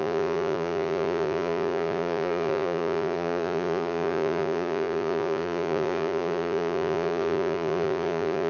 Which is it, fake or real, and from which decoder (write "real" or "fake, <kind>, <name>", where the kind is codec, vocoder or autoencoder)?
fake, vocoder, Vocos